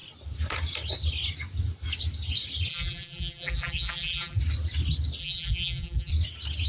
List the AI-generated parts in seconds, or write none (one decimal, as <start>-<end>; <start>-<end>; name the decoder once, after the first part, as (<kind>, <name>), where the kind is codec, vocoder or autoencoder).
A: 2.7-4.4 (vocoder, BigVGAN v2); 5.2-6.1